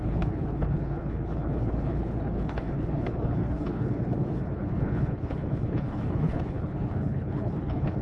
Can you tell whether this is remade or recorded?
remade